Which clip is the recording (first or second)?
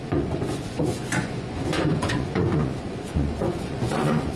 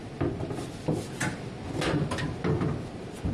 second